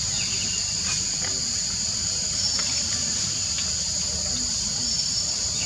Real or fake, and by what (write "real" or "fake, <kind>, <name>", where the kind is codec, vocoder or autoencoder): real